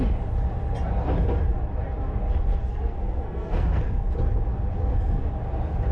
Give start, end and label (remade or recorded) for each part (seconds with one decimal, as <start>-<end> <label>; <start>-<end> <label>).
0.0-2.7 recorded; 2.7-4.0 remade; 4.0-4.8 recorded; 4.8-5.3 remade; 5.3-5.9 recorded